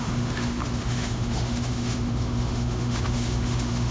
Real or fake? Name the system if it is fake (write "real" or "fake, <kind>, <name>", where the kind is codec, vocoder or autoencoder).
fake, autoencoder, DAC-VAE